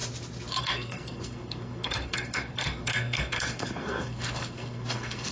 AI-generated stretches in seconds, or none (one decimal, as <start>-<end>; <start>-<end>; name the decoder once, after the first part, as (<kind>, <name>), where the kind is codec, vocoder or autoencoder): 0.6-5.3 (codec, SNAC)